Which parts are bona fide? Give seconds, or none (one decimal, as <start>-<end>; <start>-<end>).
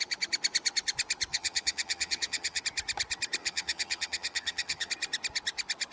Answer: 0.0-1.3; 2.6-3.4; 4.9-5.9